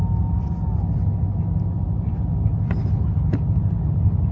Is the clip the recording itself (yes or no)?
yes